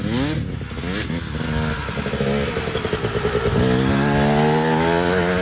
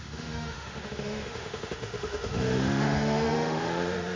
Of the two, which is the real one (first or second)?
first